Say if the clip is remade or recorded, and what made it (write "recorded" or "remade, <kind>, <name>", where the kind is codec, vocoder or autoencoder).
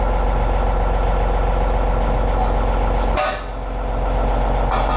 recorded